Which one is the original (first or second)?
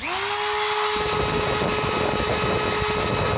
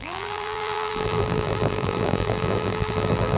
first